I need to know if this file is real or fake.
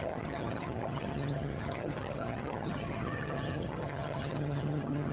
fake